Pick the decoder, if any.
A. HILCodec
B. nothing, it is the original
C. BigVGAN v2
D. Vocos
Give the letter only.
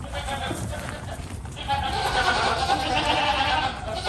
B